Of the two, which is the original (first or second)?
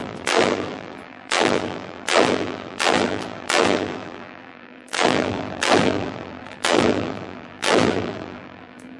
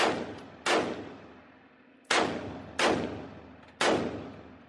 second